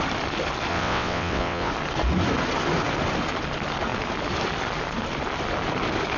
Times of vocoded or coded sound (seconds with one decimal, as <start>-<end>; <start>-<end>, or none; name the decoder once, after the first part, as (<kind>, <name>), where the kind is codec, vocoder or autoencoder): 0.7-1.7 (vocoder, WaveNeXt)